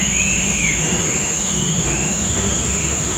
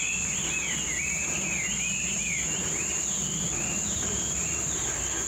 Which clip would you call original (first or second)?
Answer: second